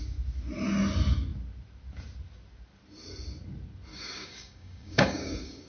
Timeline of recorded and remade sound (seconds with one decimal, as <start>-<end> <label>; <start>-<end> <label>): 0.0-3.9 recorded; 3.9-5.7 remade